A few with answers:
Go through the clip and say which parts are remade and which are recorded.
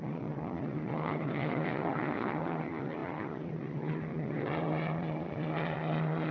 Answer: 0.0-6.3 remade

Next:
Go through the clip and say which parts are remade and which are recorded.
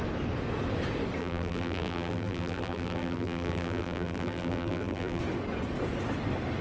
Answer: 0.0-1.2 recorded; 1.2-5.2 remade; 5.2-6.6 recorded